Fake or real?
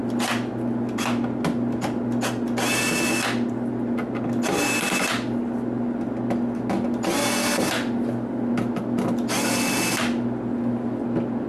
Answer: real